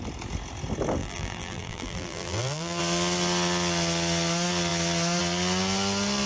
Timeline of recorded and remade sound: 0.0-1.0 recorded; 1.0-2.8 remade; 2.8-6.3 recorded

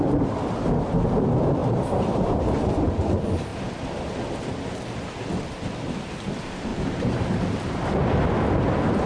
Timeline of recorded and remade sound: 0.0-1.6 recorded; 1.6-2.4 remade; 2.4-6.7 recorded; 6.7-7.9 remade; 7.9-9.1 recorded

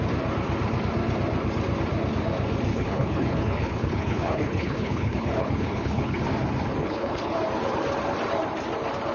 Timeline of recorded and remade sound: 0.0-2.7 recorded; 2.7-6.2 remade; 6.2-6.8 recorded; 6.8-7.4 remade; 7.4-9.1 recorded

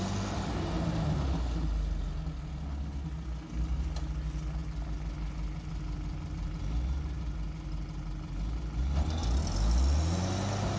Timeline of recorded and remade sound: 0.0-10.8 recorded

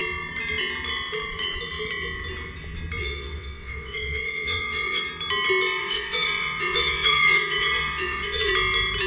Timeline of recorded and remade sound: 0.0-3.0 recorded; 3.0-5.1 remade; 5.1-5.8 recorded; 5.8-8.5 remade; 8.5-9.1 recorded

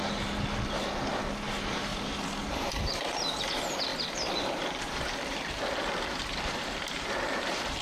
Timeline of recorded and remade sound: 0.0-1.3 recorded; 1.3-7.8 remade